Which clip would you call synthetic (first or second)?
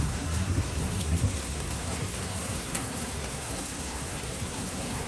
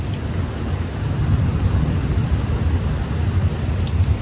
first